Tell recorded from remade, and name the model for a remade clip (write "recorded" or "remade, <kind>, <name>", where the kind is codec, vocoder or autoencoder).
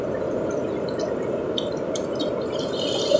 recorded